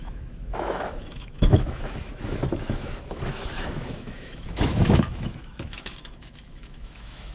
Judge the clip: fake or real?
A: fake